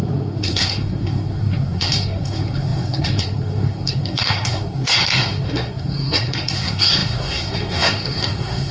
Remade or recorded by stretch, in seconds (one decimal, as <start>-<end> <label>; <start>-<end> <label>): 0.0-8.7 remade